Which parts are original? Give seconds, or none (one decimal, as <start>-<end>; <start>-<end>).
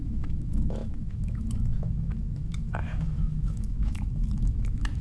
none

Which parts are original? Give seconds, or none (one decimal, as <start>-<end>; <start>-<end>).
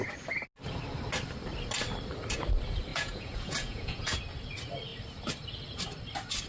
0.0-2.9; 4.2-6.5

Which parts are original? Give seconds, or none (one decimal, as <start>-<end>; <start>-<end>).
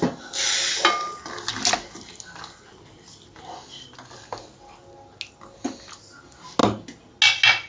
0.0-7.7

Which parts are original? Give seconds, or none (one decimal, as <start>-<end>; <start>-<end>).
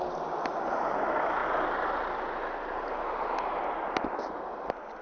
0.0-5.0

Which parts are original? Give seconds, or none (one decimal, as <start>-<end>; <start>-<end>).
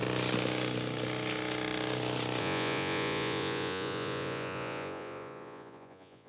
0.0-2.4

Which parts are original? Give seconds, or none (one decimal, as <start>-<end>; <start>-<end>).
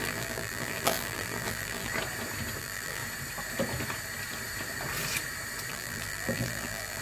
1.9-2.6; 3.0-5.7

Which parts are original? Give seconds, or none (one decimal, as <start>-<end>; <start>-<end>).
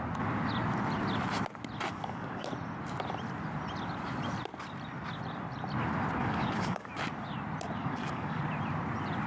0.0-1.9; 2.5-6.2; 6.9-7.8; 8.4-9.3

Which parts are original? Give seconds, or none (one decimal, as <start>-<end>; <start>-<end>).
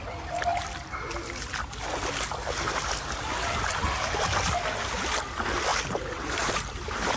0.0-0.5; 1.1-5.7